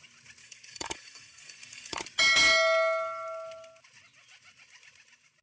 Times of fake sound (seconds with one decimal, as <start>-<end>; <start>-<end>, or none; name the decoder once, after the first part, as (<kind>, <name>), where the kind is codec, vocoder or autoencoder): 0.4-2.0 (codec, DAC)

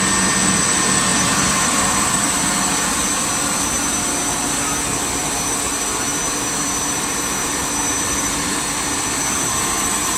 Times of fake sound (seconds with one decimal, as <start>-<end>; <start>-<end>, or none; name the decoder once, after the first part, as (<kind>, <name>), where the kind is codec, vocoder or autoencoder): 1.1-2.2 (vocoder, BigVGAN v2); 7.4-8.6

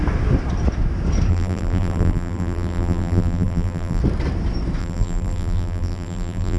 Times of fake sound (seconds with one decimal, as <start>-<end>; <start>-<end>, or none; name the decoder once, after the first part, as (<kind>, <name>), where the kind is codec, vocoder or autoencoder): 1.3-4.0 (vocoder, BigVGAN v2); 4.8-6.6

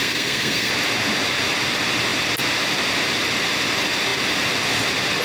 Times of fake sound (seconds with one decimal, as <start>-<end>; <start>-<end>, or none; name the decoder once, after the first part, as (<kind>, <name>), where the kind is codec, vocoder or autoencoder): 0.0-0.7 (codec, SNAC)

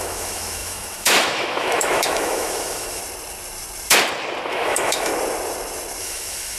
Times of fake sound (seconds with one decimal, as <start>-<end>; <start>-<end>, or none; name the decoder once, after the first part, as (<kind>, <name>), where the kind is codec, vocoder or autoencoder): 0.0-3.0 (autoencoder, DAC-VAE); 4.5-5.1; 6.0-6.6

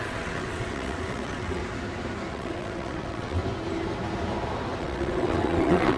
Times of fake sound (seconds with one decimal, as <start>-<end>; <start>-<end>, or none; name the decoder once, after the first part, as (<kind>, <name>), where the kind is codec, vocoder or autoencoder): 0.0-1.6 (vocoder, WaveNeXt); 2.3-3.4; 4.8-6.0